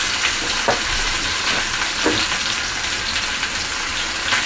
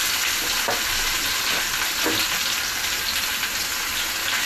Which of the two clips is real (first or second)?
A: second